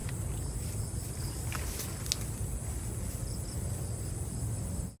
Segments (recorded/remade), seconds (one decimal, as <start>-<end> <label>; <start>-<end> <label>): 0.0-5.0 recorded